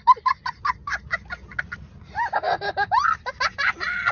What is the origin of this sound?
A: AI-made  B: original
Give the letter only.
B